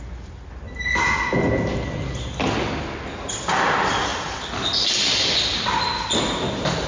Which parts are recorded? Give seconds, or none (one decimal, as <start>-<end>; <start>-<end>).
0.0-6.9